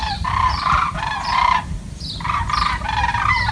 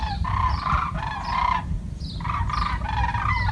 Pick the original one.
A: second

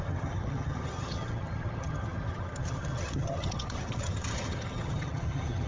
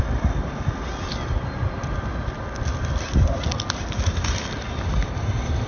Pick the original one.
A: second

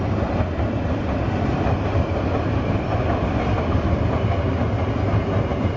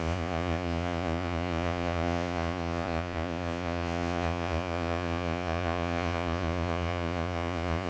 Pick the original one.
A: first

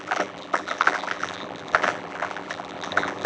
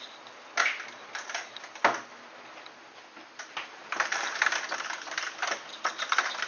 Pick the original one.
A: second